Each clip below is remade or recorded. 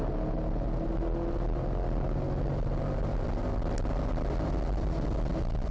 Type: recorded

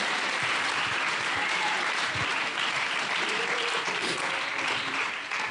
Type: remade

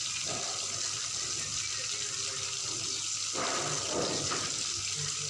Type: recorded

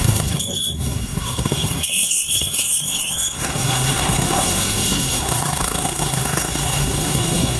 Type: remade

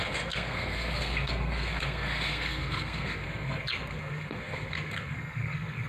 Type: remade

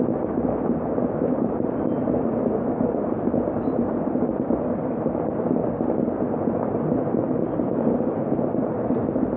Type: remade